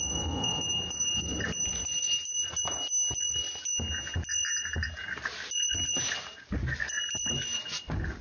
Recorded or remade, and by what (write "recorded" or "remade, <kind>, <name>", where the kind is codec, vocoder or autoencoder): recorded